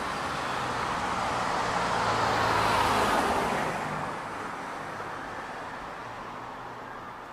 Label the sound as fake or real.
real